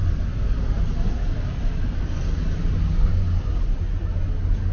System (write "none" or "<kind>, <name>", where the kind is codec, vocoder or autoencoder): none